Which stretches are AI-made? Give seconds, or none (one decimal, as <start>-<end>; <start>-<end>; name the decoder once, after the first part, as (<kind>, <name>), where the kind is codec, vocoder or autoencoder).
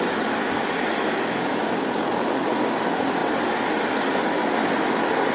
none